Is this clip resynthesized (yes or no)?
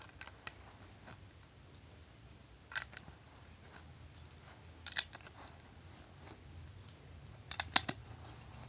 no